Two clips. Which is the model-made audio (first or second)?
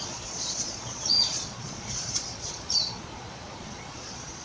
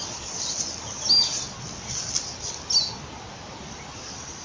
first